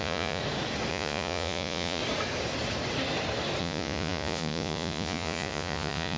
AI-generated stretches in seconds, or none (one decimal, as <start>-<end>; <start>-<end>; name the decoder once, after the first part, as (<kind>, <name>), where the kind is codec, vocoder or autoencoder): 0.0-0.4 (vocoder, Vocos); 0.9-2.0; 3.6-6.2